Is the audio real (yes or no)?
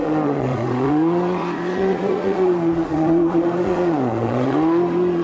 no